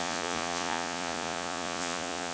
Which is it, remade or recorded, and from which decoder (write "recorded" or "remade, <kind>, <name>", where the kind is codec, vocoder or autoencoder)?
remade, vocoder, Vocos